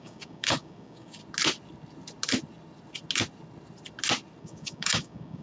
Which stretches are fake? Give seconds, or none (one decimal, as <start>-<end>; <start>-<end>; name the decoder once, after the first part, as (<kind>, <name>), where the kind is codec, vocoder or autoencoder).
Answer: 0.0-1.2 (codec, DAC); 4.4-5.4